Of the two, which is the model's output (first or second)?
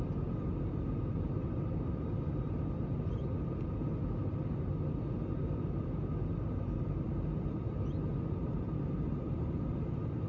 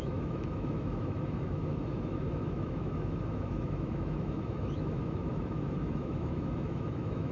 second